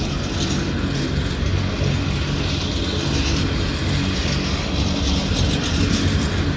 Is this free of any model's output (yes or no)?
yes